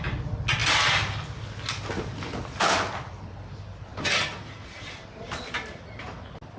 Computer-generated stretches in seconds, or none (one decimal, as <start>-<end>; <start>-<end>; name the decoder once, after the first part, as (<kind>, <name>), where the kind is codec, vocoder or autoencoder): 3.9-5.8 (vocoder, BigVGAN v2)